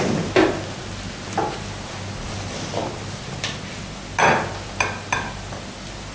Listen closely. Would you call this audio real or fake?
real